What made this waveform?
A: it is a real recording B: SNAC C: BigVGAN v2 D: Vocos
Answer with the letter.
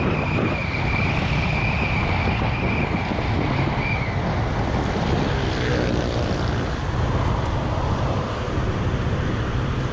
A